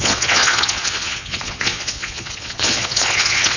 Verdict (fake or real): fake